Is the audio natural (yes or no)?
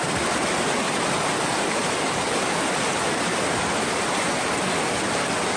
yes